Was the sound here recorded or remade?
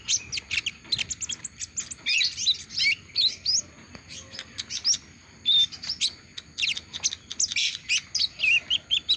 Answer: recorded